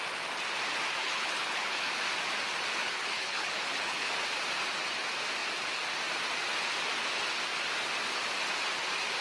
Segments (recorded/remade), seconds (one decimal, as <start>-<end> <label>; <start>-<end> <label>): 0.0-1.0 recorded; 1.0-1.9 remade; 1.9-2.8 recorded; 2.8-4.1 remade; 4.1-9.2 recorded